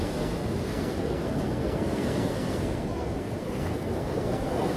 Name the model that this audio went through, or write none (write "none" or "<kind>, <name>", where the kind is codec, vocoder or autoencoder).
codec, SNAC